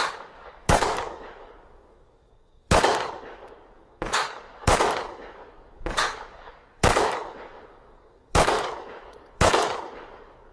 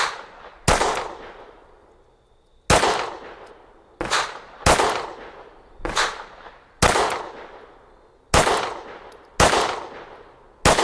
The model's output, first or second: first